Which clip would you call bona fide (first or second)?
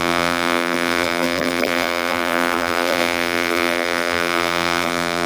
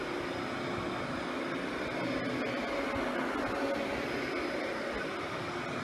second